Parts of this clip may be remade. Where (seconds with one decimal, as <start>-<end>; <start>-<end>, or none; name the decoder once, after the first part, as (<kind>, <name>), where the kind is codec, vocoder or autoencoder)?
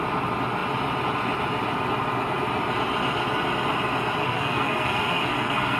4.2-5.8 (codec, SNAC)